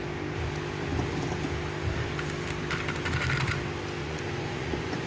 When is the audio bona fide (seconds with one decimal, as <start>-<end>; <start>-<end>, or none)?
0.0-4.0